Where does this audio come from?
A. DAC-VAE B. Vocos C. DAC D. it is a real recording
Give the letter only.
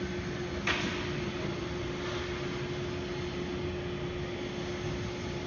D